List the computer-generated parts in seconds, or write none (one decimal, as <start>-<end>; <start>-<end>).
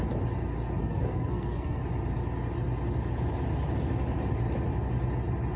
0.8-1.8